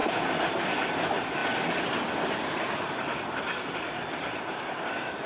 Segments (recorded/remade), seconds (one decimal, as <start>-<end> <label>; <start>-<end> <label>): 0.0-5.3 recorded